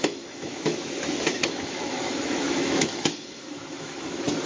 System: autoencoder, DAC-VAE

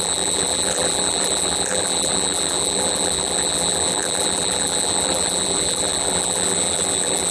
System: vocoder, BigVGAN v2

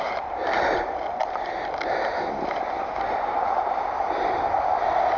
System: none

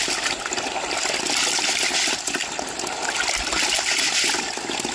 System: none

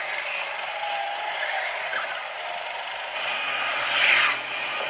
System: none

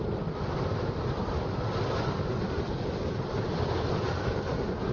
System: none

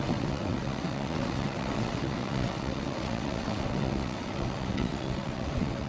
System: vocoder, WaveNeXt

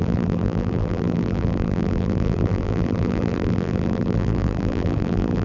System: vocoder, BigVGAN v2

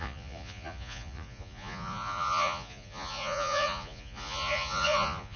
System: vocoder, Vocos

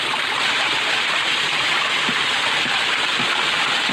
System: vocoder, BigVGAN v2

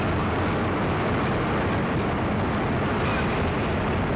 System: none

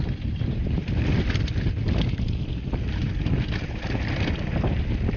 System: none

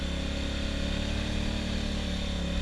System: none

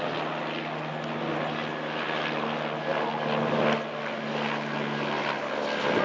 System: none